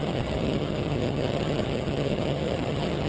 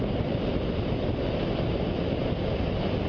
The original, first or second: second